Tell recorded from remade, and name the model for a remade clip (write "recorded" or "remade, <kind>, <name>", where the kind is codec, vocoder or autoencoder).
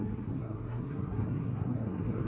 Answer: remade, codec, SNAC